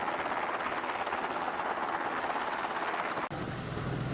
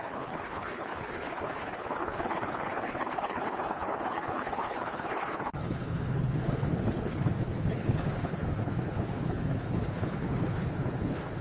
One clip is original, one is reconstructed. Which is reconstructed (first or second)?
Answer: second